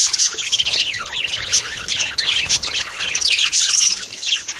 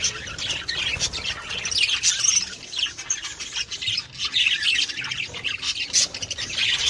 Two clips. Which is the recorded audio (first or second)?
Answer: second